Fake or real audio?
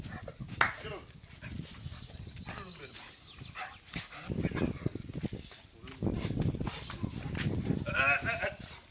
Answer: real